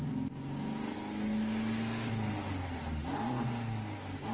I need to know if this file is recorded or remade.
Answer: recorded